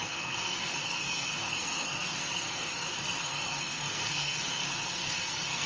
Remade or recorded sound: remade